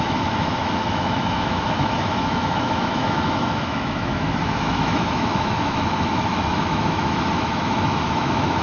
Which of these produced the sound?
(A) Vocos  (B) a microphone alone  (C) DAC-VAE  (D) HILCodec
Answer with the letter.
C